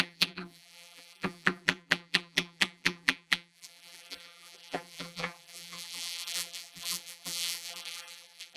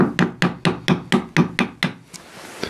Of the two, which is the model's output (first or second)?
first